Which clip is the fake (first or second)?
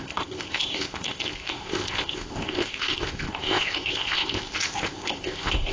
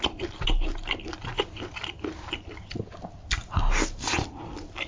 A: first